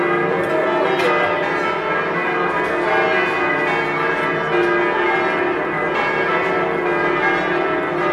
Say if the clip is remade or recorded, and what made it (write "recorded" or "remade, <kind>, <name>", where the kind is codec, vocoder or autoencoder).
recorded